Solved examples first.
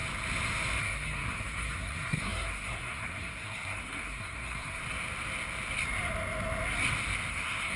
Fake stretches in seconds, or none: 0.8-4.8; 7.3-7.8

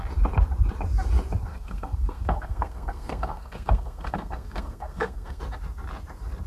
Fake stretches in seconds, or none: 1.5-5.4

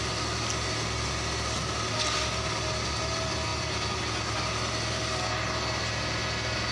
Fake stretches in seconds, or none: none